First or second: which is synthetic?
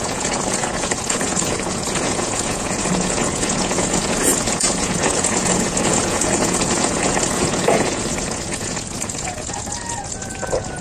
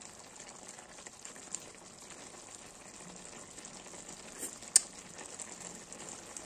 first